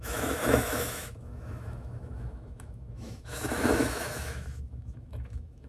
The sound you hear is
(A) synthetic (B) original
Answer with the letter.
A